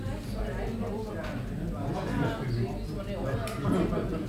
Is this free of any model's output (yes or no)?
yes